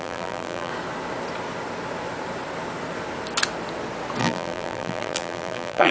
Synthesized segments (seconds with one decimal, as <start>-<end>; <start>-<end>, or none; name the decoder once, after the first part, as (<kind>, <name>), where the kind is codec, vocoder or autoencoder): 0.0-0.7 (vocoder, BigVGAN v2); 4.2-5.9